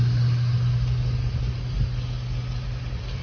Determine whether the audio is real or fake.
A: real